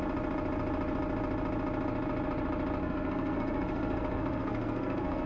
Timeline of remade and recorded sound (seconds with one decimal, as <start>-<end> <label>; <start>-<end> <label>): 0.0-2.8 recorded; 2.8-5.3 remade